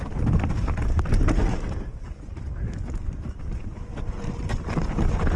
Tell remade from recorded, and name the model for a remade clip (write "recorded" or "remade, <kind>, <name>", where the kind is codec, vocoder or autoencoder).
recorded